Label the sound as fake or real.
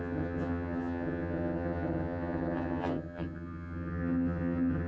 fake